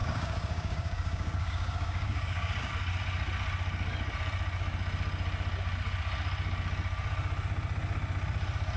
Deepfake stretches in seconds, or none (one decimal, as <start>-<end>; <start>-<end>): 0.0-2.7